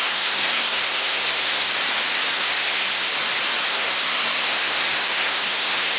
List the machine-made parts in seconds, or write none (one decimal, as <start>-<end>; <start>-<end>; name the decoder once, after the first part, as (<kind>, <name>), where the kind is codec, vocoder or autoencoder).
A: 0.0-1.7 (codec, SNAC); 2.3-3.1; 3.7-6.0